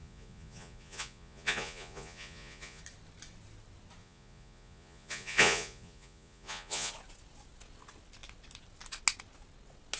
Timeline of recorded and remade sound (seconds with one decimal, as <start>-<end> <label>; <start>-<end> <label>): 0.0-2.8 remade; 2.8-4.0 recorded; 4.0-6.9 remade; 6.9-10.0 recorded